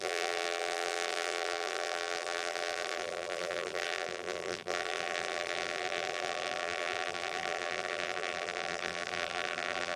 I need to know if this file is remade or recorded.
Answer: remade